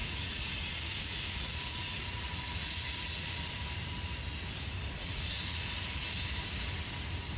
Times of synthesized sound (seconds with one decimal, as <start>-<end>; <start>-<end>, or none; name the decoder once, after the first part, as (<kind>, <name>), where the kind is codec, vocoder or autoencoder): 0.0-3.5 (vocoder, Vocos); 5.0-5.9